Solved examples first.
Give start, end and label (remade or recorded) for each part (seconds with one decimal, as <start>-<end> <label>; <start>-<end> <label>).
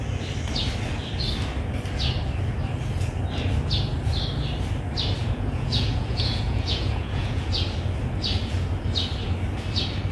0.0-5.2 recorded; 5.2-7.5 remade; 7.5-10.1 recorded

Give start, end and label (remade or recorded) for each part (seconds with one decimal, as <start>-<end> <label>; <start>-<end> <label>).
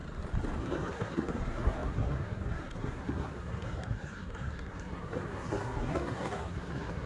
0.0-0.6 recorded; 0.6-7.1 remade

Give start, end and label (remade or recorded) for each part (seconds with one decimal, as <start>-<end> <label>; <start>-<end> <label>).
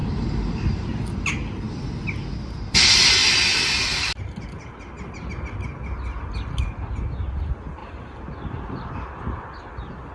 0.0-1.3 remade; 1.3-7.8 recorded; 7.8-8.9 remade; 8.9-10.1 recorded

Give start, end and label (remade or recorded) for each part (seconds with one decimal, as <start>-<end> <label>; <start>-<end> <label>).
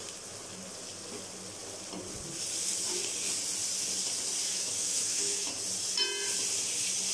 0.0-4.4 recorded; 4.4-5.5 remade; 5.5-7.1 recorded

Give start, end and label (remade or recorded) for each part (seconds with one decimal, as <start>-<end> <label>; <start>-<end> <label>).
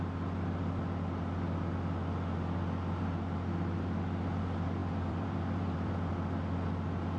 0.0-4.8 recorded; 4.8-6.1 remade; 6.1-7.2 recorded